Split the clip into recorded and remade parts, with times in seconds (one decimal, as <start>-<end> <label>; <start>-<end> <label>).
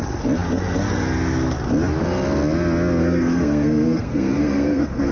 0.0-3.0 recorded; 3.0-5.1 remade